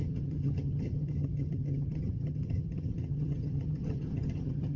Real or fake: fake